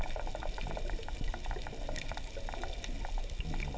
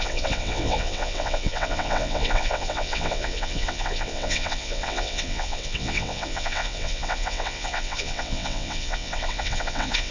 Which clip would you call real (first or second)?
first